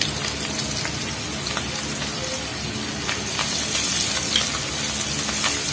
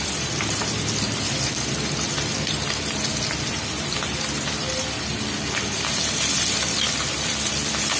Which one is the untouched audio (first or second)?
first